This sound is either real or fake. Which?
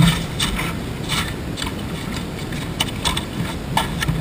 real